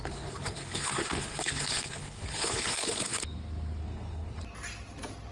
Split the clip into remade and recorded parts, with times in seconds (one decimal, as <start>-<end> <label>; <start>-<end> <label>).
0.0-3.2 remade; 3.2-3.8 recorded; 3.8-4.4 remade; 4.4-5.3 recorded